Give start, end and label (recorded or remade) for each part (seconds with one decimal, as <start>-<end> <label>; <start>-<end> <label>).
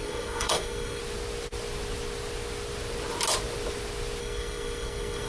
0.0-1.0 remade; 1.0-4.2 recorded; 4.2-5.3 remade